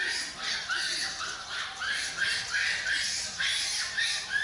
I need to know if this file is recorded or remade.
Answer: remade